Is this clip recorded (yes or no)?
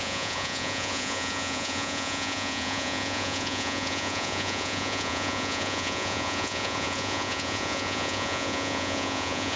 no